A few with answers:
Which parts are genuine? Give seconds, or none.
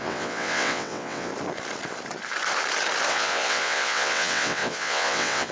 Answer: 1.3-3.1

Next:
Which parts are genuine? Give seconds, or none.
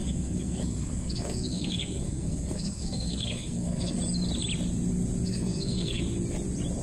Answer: 4.0-5.3; 6.0-6.8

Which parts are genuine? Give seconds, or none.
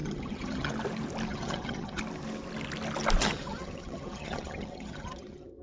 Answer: 0.7-1.3; 2.0-3.2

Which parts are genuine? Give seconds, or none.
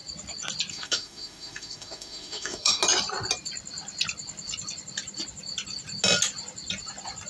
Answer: 0.0-0.7; 2.8-7.3